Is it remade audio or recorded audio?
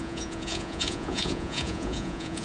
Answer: remade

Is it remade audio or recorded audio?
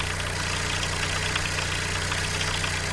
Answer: recorded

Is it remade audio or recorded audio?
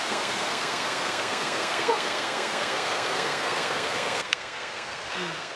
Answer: remade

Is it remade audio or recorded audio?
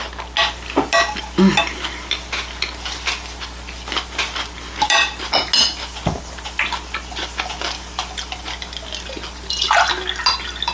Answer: recorded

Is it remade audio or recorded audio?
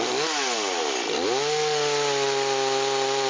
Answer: recorded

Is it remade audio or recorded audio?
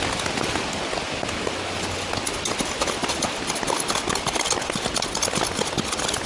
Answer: recorded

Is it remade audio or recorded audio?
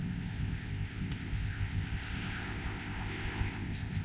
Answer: remade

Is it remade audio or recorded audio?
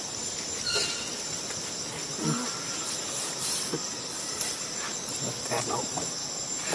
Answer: recorded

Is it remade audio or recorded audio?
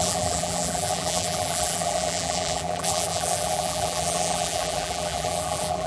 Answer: remade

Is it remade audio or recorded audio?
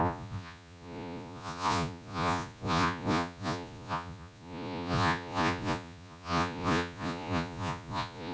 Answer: remade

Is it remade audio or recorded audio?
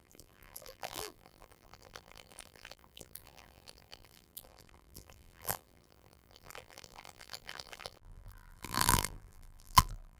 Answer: remade